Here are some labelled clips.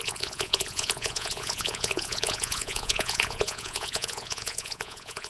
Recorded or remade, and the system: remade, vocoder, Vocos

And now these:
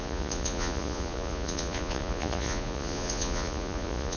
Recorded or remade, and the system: remade, vocoder, Vocos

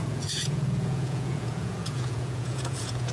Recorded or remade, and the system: remade, vocoder, Vocos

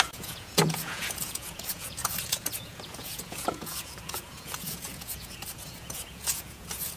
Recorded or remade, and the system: remade, vocoder, Vocos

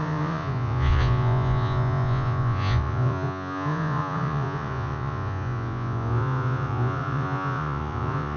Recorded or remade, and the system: remade, vocoder, Vocos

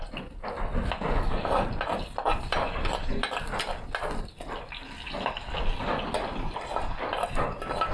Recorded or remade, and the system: recorded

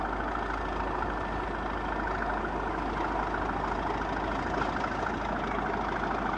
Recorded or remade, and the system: recorded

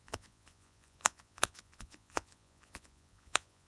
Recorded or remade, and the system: remade, vocoder, Vocos